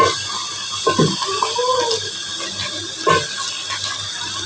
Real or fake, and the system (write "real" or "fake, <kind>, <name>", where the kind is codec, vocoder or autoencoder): real